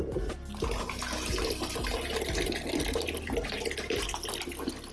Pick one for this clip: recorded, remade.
recorded